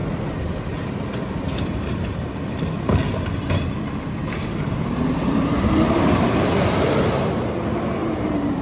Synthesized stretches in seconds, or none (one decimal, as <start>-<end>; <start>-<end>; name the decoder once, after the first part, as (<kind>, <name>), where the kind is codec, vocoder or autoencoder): 0.9-8.6 (vocoder, BigVGAN v2)